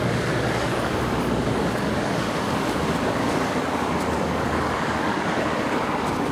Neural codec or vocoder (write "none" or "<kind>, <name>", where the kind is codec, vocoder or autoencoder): codec, DAC